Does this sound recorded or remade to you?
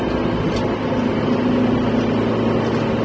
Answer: recorded